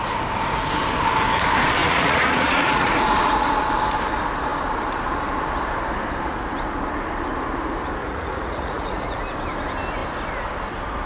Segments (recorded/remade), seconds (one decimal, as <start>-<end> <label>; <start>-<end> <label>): 0.0-1.8 recorded; 1.8-3.6 remade; 3.6-8.0 recorded; 8.0-9.2 remade; 9.2-11.1 recorded